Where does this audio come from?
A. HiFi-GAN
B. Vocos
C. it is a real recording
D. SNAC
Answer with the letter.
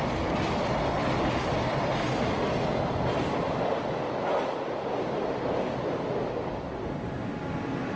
C